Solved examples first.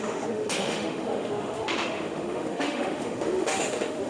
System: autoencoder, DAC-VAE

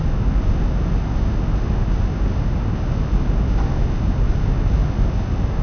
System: none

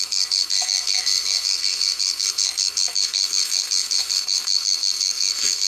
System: codec, SNAC